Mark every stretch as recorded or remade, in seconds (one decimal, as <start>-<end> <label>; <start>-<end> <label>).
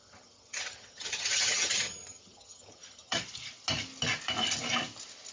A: 0.0-3.2 remade; 3.2-5.3 recorded